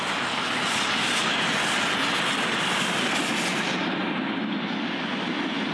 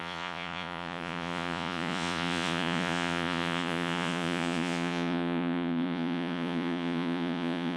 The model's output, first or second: second